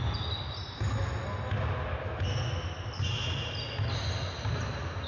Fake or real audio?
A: real